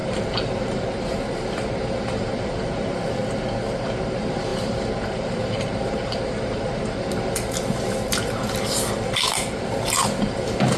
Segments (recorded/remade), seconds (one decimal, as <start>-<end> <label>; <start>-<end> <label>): 0.0-3.2 remade; 3.2-4.1 recorded; 4.1-10.8 remade